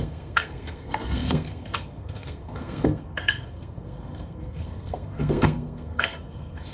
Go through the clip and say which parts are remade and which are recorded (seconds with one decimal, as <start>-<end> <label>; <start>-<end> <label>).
0.0-6.7 remade